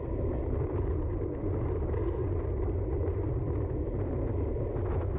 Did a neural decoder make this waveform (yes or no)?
yes